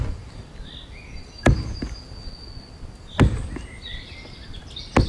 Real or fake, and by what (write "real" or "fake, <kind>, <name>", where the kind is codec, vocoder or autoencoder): real